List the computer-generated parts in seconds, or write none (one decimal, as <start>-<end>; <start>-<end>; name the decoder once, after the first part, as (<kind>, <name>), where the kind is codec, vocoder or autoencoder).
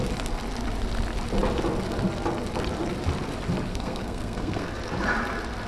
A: 3.7-4.7 (codec, SNAC)